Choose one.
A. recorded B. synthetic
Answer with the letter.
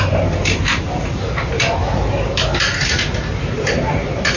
A